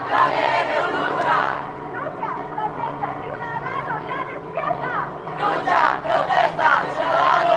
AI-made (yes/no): yes